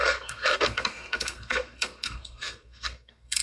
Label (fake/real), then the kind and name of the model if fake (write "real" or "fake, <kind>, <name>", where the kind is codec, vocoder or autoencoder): fake, codec, SNAC